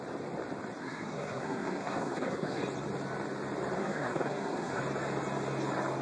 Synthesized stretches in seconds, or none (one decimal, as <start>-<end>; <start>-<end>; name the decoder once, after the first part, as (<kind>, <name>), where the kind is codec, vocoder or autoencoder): 0.8-2.6 (codec, SNAC); 3.8-4.8